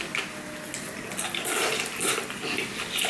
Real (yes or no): yes